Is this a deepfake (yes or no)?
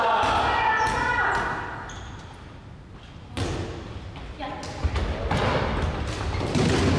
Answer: no